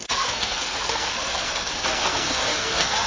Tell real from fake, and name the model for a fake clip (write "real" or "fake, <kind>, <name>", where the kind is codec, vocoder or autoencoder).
fake, codec, SNAC